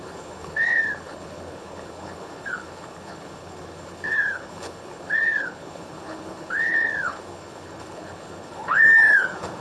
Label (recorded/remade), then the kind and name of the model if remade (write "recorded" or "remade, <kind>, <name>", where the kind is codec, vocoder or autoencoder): remade, codec, HILCodec